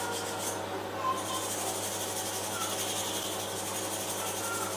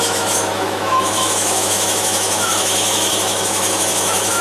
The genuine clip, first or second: first